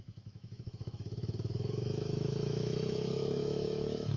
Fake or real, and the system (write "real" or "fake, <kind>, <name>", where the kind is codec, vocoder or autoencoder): fake, autoencoder, DAC-VAE